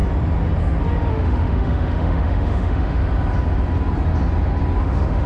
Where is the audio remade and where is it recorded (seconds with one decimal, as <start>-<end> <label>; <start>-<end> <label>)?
0.0-1.1 recorded; 1.1-3.0 remade; 3.0-4.8 recorded; 4.8-5.3 remade